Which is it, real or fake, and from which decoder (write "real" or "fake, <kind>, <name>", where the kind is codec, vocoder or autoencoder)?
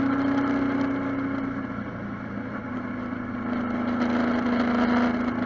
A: real